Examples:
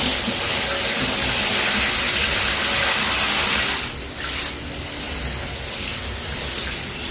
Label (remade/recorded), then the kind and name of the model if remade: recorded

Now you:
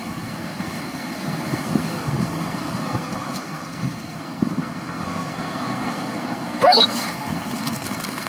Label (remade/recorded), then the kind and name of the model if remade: remade, codec, SNAC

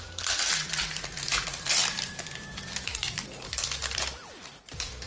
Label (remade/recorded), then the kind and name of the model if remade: recorded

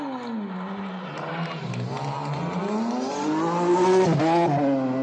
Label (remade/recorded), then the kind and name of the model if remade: recorded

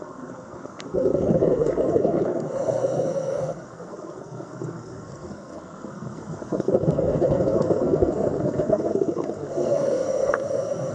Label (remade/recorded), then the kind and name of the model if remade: remade, codec, SNAC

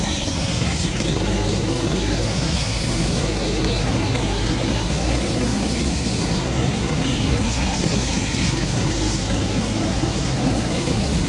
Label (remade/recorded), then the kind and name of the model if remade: remade, codec, SNAC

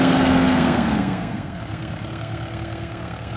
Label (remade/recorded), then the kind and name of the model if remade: remade, codec, SNAC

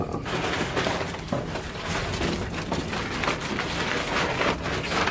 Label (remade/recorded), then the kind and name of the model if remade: recorded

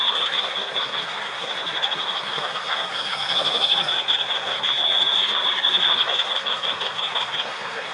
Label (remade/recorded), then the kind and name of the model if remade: remade, codec, SNAC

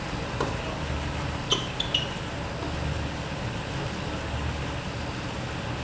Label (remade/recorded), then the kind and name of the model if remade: recorded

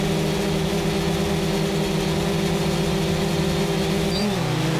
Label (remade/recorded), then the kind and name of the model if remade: recorded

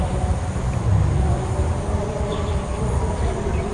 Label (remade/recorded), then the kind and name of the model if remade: recorded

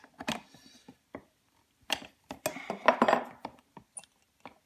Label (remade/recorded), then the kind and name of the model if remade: recorded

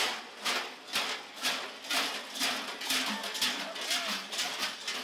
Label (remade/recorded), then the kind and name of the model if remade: recorded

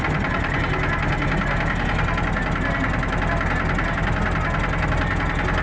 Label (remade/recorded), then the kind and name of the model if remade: recorded